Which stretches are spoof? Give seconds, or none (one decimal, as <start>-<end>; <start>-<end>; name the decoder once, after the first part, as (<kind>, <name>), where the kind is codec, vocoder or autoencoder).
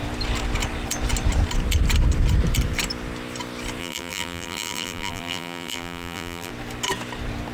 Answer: 3.8-6.5 (vocoder, BigVGAN v2)